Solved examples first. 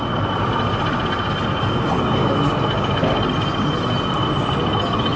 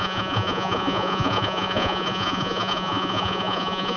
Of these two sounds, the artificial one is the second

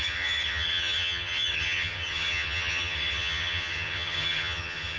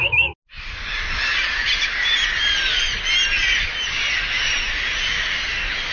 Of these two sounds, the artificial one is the first